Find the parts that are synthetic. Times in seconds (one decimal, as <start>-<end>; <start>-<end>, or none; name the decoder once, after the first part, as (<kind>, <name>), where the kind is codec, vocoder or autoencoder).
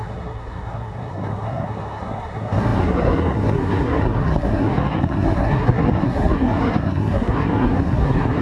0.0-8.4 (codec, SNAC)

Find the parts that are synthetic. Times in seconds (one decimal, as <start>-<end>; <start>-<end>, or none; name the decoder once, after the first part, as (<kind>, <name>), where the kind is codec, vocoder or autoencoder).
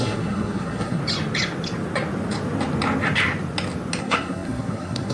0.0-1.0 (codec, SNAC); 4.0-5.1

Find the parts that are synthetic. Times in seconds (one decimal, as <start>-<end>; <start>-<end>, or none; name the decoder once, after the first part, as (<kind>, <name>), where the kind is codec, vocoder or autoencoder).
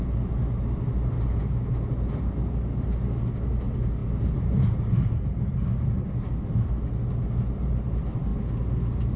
none